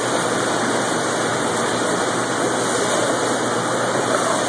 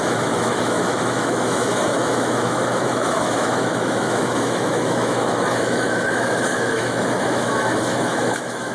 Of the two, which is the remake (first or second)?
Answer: second